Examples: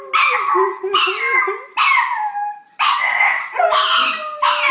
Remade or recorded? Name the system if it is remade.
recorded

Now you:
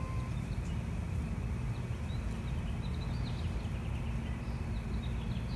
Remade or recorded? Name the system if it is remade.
recorded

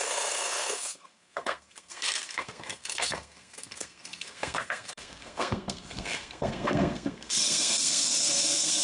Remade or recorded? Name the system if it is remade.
remade, codec, SNAC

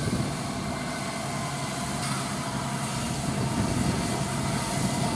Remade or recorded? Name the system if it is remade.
recorded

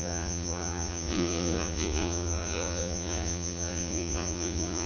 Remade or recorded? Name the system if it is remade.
remade, vocoder, Vocos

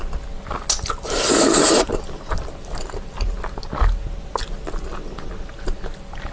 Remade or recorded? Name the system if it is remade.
recorded